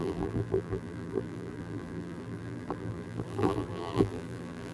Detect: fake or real fake